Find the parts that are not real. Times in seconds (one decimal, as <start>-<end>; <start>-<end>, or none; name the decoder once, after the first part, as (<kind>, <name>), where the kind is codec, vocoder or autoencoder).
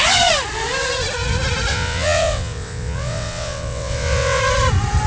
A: 1.7-4.4 (vocoder, WaveNeXt)